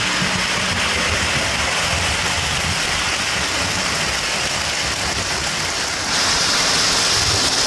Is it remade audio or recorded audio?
recorded